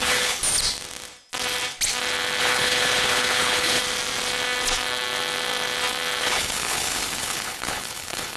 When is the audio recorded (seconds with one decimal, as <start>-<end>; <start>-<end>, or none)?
0.4-2.4; 3.8-6.2